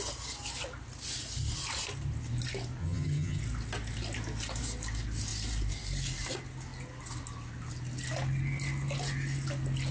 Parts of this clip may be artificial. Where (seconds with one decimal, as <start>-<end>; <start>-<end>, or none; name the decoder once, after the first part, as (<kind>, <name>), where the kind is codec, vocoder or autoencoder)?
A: 2.8-3.4 (vocoder, HiFi-GAN)

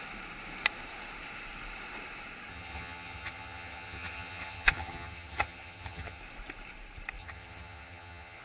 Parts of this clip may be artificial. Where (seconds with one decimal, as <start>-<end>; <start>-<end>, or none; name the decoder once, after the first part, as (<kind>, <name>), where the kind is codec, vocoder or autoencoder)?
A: 2.5-6.2 (vocoder, HiFi-GAN); 7.2-8.4